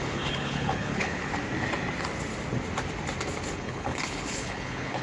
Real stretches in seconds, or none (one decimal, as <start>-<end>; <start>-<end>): 1.3-3.5